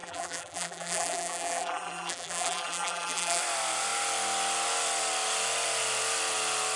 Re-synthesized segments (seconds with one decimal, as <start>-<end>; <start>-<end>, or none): 0.0-3.4

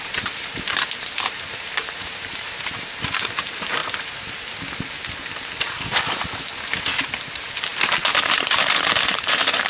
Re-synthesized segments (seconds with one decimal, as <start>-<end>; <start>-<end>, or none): 0.0-3.8; 7.2-9.7

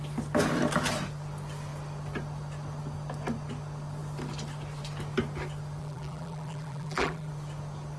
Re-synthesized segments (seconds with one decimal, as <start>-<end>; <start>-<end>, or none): 5.8-7.3

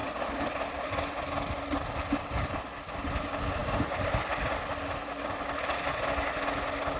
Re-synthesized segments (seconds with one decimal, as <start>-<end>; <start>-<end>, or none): 0.0-0.8; 3.6-4.2

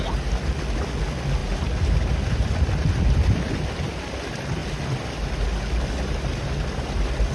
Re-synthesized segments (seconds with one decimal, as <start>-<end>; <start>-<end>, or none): none